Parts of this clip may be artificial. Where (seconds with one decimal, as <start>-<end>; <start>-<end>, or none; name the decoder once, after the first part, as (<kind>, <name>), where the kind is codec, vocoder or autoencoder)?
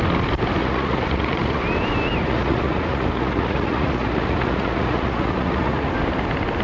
0.6-1.6 (vocoder, Vocos); 2.2-5.9